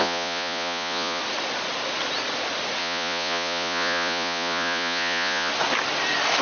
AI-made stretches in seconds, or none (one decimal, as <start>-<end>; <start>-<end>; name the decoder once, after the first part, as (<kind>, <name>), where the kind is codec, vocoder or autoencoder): 0.0-1.2 (vocoder, Vocos); 2.8-5.5